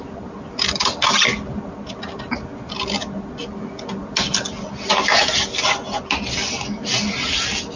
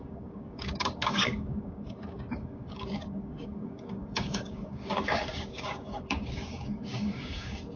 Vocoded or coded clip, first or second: second